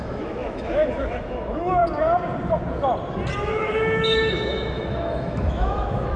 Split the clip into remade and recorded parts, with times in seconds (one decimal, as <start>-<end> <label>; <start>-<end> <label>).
0.0-1.8 remade; 1.8-3.4 recorded; 3.4-6.2 remade

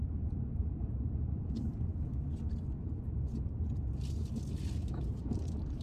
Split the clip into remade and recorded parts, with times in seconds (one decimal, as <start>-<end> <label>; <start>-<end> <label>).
0.0-1.9 remade; 1.9-5.8 recorded

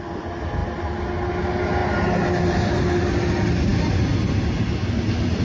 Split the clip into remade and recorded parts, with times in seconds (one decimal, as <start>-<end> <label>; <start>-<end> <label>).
0.0-5.4 recorded

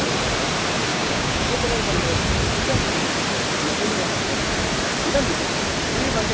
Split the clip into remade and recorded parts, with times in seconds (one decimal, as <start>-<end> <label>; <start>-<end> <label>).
0.0-0.9 recorded; 0.9-1.5 remade; 1.5-6.3 recorded

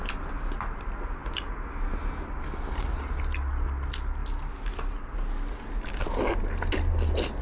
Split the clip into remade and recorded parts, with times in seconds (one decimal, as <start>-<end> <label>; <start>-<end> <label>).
0.0-7.4 recorded

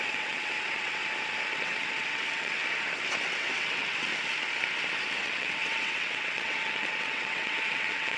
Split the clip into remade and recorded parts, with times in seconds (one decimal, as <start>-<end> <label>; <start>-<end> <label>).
0.0-1.0 remade; 1.0-1.5 recorded; 1.5-2.6 remade; 2.6-3.3 recorded; 3.3-4.1 remade; 4.1-5.2 recorded; 5.2-8.2 remade